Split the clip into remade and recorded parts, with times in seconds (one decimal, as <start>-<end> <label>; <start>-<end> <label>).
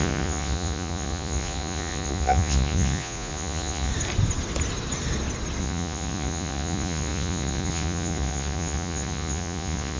0.0-3.9 remade; 3.9-5.6 recorded; 5.6-10.0 remade